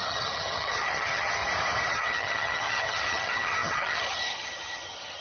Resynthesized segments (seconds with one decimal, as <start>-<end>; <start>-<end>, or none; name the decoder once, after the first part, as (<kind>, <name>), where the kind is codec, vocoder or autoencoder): 0.0-1.4 (vocoder, HiFi-GAN); 1.9-5.2